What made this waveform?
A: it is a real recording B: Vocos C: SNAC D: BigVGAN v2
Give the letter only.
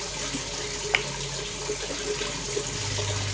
A